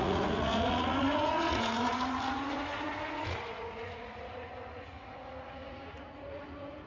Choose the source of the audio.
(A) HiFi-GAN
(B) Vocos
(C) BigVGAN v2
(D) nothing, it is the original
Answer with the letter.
B